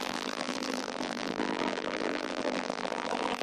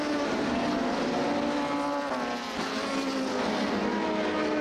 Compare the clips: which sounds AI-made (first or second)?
first